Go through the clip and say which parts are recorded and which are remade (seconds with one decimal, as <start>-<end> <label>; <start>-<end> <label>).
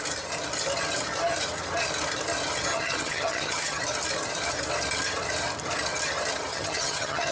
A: 0.0-2.7 recorded; 2.7-3.8 remade; 3.8-6.5 recorded; 6.5-7.3 remade